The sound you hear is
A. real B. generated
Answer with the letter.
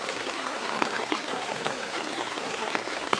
B